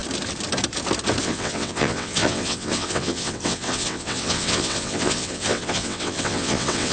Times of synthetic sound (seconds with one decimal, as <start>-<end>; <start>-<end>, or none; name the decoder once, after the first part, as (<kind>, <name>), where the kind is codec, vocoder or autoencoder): 1.2-6.9 (vocoder, WaveNeXt)

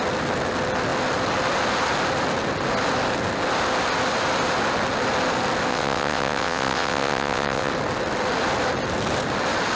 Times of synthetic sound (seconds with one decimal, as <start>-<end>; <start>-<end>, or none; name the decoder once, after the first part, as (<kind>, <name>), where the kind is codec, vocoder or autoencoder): 5.7-7.7 (vocoder, WaveNeXt)

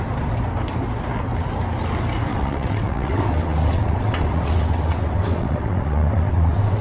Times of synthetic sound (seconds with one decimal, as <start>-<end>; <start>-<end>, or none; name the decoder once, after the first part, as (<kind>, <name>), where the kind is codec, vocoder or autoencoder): 2.3-6.8 (vocoder, WaveNeXt)

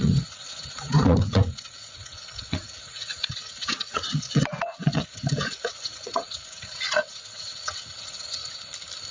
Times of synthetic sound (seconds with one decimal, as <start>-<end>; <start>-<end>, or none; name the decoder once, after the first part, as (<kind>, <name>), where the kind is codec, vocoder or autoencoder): 0.0-8.4 (vocoder, WaveNeXt)

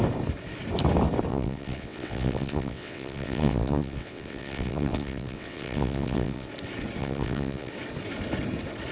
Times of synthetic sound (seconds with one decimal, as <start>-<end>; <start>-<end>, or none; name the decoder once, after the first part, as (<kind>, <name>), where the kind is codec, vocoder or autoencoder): 1.3-6.5 (vocoder, WaveNeXt); 7.0-7.7